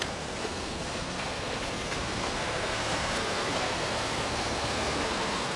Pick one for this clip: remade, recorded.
remade